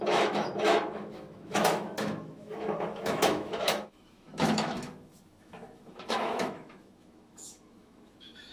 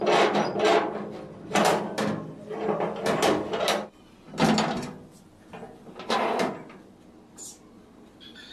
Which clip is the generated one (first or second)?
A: first